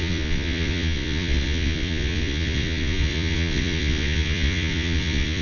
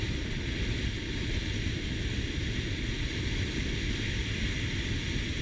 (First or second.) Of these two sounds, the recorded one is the second